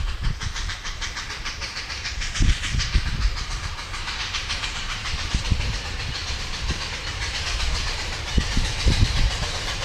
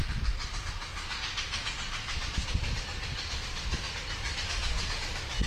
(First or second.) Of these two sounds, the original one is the second